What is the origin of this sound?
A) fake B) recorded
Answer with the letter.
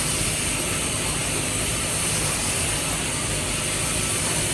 A